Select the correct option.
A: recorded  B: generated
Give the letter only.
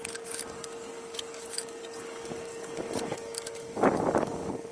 B